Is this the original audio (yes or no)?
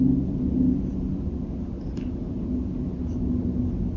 yes